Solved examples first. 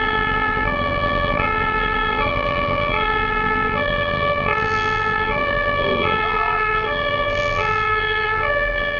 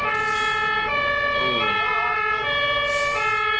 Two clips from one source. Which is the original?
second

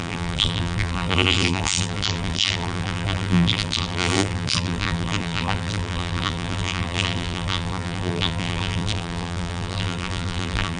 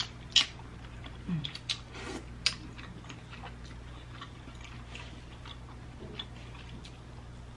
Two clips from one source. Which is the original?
second